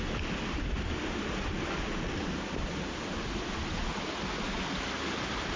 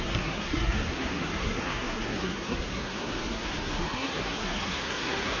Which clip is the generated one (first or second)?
second